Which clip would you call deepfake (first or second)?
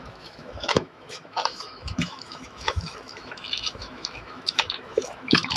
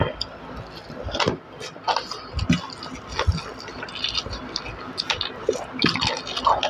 first